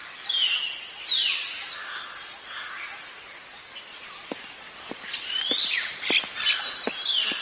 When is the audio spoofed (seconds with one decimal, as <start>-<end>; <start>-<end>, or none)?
none